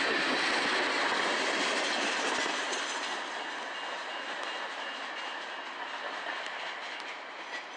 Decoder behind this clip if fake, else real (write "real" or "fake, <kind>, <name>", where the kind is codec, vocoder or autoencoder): real